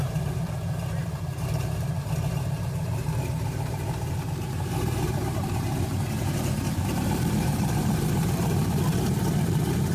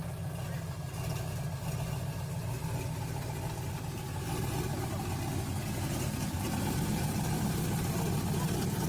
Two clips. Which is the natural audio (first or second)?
second